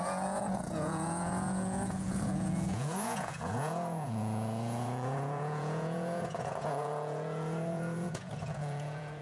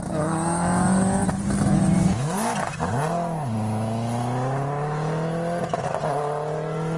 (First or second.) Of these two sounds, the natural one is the second